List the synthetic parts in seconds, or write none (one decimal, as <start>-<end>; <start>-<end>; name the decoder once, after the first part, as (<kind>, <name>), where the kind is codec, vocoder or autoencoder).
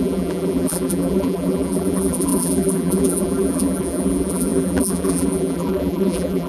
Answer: 0.0-6.5 (vocoder, BigVGAN v2)